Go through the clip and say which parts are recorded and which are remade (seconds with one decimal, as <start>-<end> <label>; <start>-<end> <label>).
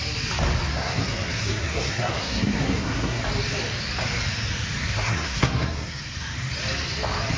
0.0-0.7 recorded; 0.7-3.2 remade; 3.2-4.8 recorded; 4.8-6.0 remade; 6.0-7.4 recorded